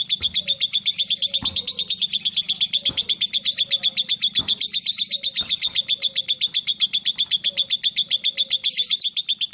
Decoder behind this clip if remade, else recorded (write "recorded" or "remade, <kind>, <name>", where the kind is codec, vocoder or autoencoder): recorded